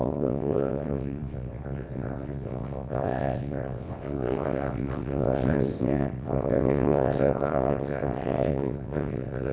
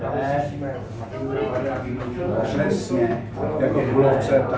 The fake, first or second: first